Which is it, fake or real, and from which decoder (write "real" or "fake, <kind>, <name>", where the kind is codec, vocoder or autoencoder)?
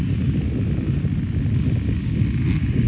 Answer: real